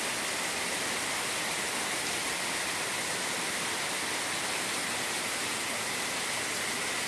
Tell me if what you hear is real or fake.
real